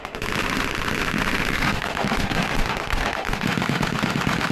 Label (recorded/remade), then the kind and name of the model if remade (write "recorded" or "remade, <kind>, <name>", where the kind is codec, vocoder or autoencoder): remade, autoencoder, DAC-VAE